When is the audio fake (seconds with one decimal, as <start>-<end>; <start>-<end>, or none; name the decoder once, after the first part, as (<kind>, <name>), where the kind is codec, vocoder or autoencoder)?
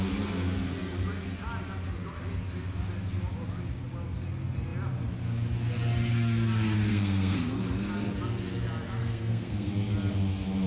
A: 6.9-7.6 (codec, SNAC); 9.0-9.7